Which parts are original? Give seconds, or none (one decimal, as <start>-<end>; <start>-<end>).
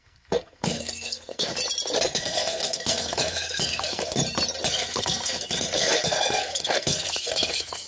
1.5-2.0; 4.2-4.7